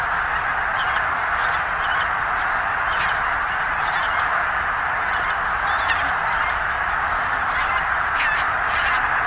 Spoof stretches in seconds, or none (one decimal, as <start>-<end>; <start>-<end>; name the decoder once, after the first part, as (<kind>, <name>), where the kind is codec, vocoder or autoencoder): none